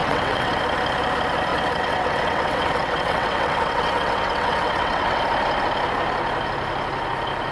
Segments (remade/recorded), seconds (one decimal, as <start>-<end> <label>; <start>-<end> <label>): 0.0-0.6 remade; 0.6-1.5 recorded; 1.5-5.2 remade; 5.2-7.5 recorded